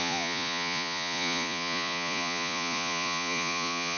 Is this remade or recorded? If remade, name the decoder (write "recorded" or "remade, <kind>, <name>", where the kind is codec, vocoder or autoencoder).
remade, vocoder, Vocos